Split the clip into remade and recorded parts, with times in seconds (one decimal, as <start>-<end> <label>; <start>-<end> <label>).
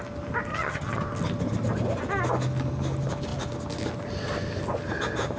0.0-0.5 recorded; 0.5-1.0 remade; 1.0-5.4 recorded